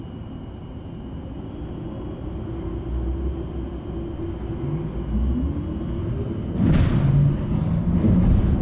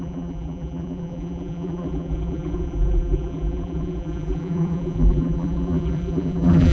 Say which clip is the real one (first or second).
first